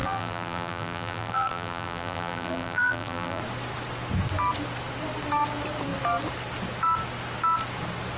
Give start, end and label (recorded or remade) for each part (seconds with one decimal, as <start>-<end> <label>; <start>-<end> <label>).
0.0-3.4 remade; 3.4-8.2 recorded